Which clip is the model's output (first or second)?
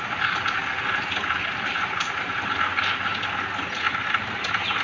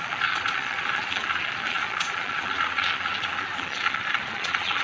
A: second